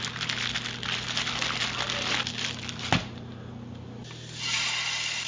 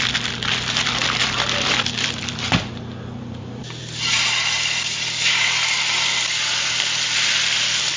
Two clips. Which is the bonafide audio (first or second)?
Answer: first